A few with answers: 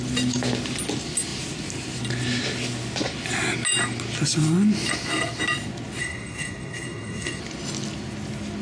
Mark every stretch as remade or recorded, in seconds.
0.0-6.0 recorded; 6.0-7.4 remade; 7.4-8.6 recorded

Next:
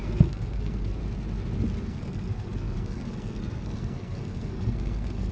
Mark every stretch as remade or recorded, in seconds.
0.0-1.0 remade; 1.0-1.8 recorded; 1.8-5.3 remade

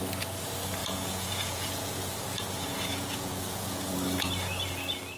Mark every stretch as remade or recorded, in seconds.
0.0-0.8 recorded; 0.8-3.9 remade; 3.9-5.2 recorded

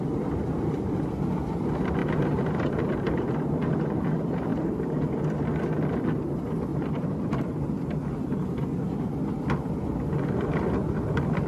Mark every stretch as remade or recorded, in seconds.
0.0-2.0 recorded; 2.0-4.1 remade; 4.1-4.5 recorded; 4.5-5.2 remade; 5.2-6.7 recorded; 6.7-7.7 remade; 7.7-11.5 recorded

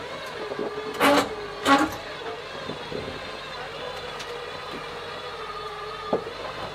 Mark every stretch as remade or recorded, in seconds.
0.0-0.6 remade; 0.6-3.9 recorded; 3.9-6.7 remade

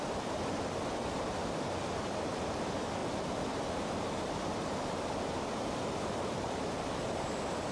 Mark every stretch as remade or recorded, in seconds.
0.0-7.7 recorded

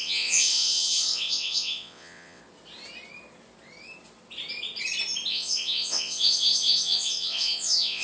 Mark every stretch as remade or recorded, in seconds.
0.0-2.4 remade; 2.4-5.3 recorded; 5.3-8.0 remade

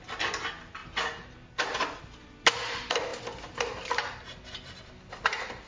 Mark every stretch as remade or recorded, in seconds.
0.0-5.7 recorded